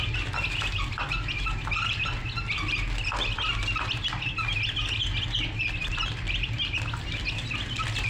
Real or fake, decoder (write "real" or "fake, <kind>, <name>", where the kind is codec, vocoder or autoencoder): real